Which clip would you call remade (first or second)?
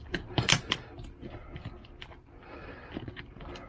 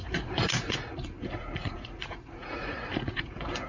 second